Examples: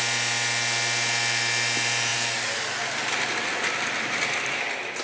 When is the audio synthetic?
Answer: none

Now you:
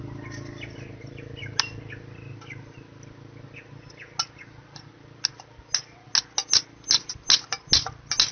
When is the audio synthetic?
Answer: none

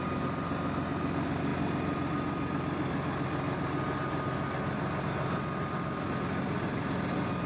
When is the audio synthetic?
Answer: none

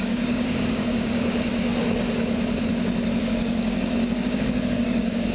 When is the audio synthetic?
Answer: 0.0-1.7; 3.2-5.3

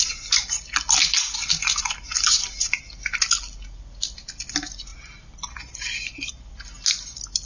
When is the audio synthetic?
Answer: none

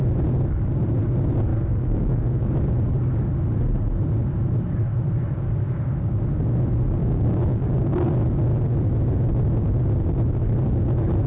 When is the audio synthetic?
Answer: 1.5-2.5; 5.3-6.2; 7.0-8.1

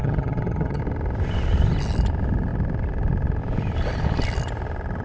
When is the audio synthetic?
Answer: 0.0-0.8